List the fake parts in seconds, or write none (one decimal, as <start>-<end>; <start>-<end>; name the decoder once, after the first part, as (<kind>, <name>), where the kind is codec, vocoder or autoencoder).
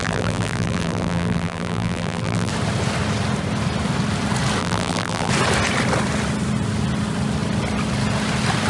0.0-2.5 (vocoder, BigVGAN v2); 4.6-5.3